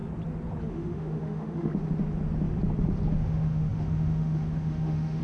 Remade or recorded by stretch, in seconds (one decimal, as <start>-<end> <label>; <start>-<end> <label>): 0.0-0.7 recorded; 0.7-1.7 remade; 1.7-3.1 recorded; 3.1-5.2 remade